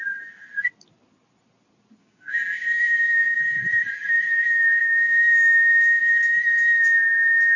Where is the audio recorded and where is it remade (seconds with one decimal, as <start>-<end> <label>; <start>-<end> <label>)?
0.0-2.0 recorded; 2.0-3.4 remade; 3.4-4.8 recorded; 4.8-6.0 remade; 6.0-7.6 recorded